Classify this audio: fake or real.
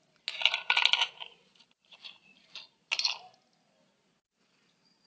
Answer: real